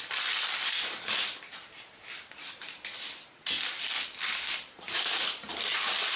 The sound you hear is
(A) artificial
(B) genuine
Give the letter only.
B